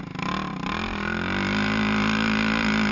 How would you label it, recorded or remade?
recorded